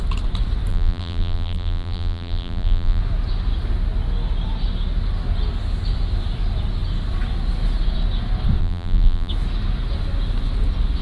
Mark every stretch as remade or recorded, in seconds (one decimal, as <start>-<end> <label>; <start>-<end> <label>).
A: 0.0-0.7 recorded; 0.7-3.0 remade; 3.0-8.6 recorded; 8.6-9.3 remade; 9.3-11.0 recorded